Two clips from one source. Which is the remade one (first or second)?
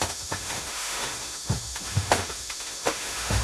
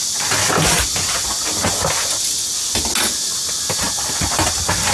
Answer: first